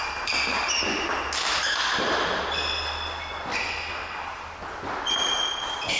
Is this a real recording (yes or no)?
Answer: yes